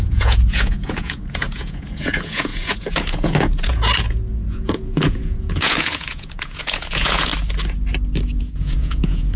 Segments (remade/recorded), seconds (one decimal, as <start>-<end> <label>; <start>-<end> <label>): 0.0-7.3 remade; 7.3-8.4 recorded; 8.4-9.4 remade